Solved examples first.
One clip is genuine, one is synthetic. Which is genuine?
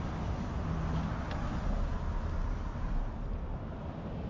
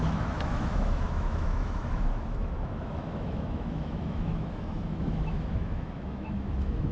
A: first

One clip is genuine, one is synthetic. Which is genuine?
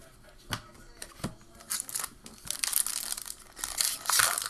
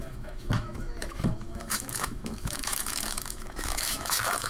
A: first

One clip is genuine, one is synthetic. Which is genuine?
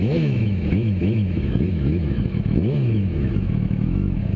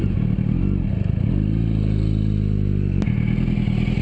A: second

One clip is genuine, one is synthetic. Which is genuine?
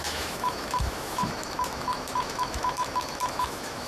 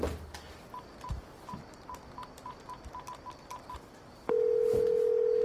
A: second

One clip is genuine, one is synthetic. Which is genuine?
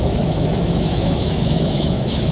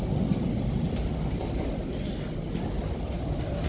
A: second